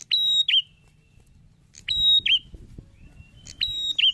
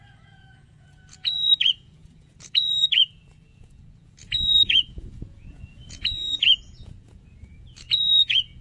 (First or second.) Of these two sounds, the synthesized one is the second